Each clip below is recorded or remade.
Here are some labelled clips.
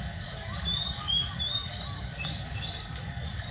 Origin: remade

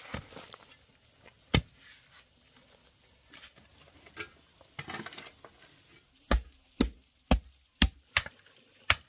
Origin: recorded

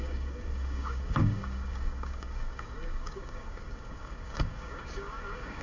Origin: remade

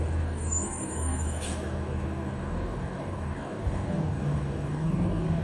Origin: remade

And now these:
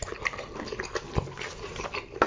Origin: recorded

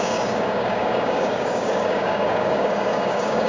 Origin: remade